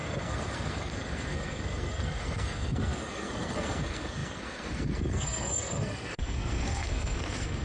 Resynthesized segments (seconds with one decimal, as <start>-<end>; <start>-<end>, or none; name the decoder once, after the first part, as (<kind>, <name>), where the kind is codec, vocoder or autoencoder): 0.0-7.6 (codec, SNAC)